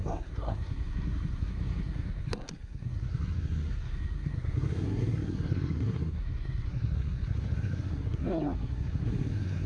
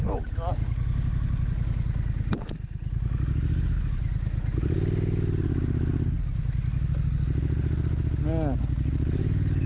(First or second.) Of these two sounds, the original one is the second